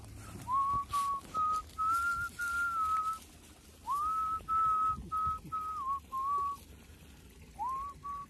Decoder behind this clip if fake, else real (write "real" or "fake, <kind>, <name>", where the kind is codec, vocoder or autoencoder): real